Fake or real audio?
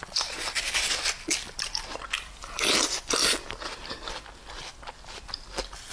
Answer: real